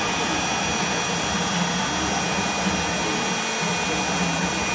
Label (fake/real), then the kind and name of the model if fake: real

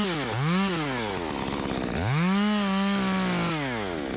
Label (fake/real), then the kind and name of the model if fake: real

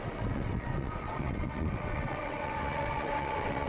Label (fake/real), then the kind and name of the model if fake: fake, vocoder, WaveNeXt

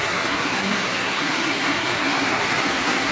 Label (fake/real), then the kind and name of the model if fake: fake, codec, SNAC